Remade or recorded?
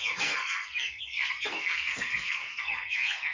remade